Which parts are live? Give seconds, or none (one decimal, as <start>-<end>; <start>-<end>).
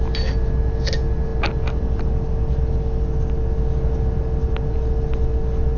0.0-5.8